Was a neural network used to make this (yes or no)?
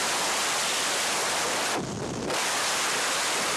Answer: no